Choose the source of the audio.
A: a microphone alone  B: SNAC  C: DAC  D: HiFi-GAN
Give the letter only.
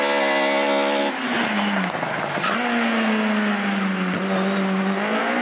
A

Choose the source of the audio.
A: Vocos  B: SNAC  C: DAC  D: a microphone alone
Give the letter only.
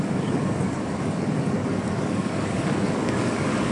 C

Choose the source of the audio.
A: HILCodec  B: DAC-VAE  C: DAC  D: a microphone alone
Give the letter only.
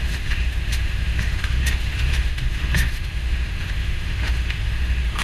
B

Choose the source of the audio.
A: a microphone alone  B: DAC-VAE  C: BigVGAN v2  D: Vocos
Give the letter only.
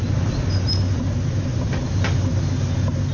A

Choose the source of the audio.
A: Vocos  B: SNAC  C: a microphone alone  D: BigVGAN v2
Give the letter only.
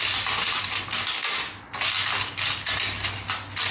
C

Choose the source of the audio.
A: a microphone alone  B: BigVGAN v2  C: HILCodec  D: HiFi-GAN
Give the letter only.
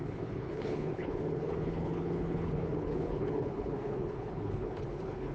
C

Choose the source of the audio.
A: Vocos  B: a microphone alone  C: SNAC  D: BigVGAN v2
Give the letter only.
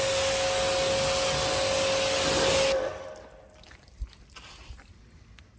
B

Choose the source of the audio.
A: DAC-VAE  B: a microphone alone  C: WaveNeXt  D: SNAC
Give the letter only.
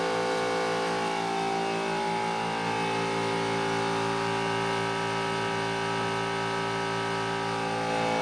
B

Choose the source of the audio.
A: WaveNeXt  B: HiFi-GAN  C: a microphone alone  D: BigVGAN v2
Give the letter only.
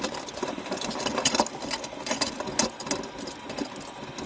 C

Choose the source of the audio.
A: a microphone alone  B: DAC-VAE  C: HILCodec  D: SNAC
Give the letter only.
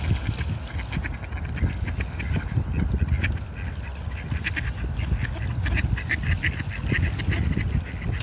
A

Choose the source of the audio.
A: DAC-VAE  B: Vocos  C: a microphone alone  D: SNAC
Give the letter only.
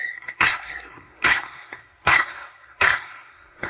D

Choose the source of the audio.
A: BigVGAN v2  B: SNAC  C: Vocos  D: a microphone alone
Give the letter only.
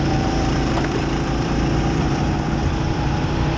A